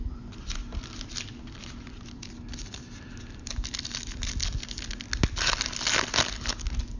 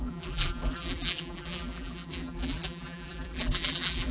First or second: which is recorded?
first